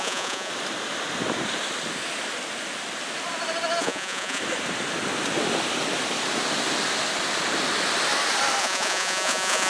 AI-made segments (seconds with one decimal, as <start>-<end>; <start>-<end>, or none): 0.0-0.5; 3.8-4.4; 8.6-9.7